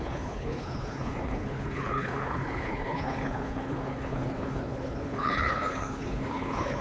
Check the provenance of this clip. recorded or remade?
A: remade